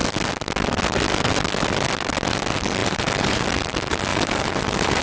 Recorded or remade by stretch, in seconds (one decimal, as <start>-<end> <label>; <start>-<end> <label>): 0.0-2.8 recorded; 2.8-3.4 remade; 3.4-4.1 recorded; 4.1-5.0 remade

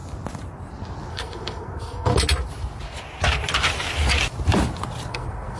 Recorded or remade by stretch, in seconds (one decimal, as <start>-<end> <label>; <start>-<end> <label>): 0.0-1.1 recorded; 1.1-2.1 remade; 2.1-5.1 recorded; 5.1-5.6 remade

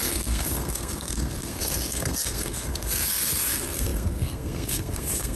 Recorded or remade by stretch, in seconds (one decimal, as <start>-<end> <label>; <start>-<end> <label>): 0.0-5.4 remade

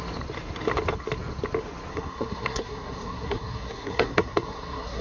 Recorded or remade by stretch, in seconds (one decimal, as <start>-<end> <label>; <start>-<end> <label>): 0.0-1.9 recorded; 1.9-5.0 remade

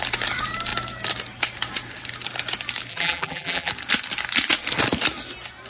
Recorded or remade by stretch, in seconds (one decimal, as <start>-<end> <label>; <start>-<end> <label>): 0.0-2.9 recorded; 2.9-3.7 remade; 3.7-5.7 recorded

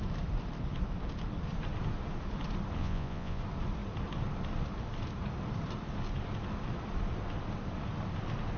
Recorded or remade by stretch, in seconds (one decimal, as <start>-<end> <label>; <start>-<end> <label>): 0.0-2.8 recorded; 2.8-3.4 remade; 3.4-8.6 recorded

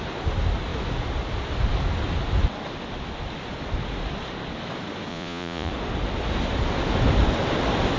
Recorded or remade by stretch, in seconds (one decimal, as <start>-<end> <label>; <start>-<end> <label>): 0.0-5.1 recorded; 5.1-5.7 remade; 5.7-8.0 recorded